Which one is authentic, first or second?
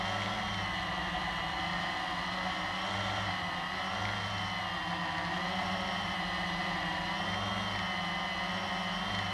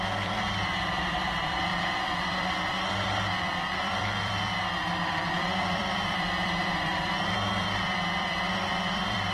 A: first